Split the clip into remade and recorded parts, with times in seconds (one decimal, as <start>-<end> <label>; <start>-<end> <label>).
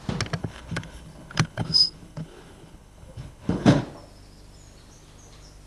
0.0-0.4 recorded; 0.4-3.8 remade; 3.8-5.7 recorded